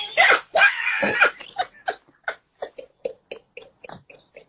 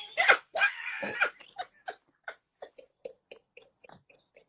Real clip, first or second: first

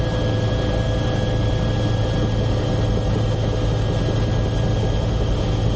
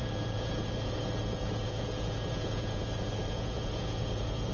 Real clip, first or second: first